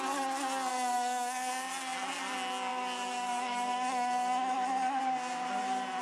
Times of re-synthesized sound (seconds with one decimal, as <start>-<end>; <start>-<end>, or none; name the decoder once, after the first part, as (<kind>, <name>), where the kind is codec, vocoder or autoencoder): 0.7-1.6 (autoencoder, DAC-VAE); 2.7-5.0